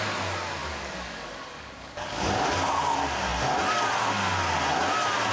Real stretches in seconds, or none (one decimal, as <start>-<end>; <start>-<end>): 0.0-0.6; 2.7-5.3